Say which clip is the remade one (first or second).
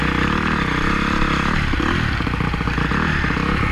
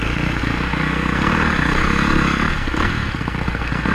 second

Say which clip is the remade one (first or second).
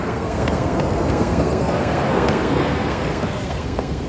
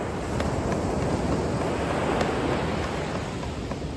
first